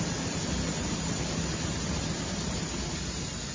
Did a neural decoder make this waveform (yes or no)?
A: no